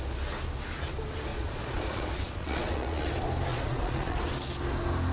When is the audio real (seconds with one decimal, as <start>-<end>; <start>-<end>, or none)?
0.0-1.3; 3.1-3.5; 4.2-5.1